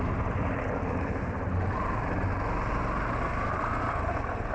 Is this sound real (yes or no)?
yes